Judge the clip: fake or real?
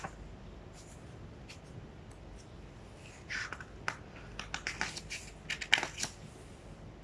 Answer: real